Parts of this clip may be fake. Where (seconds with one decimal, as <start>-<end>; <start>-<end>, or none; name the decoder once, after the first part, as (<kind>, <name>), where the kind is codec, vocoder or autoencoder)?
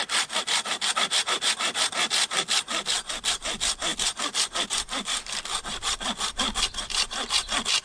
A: none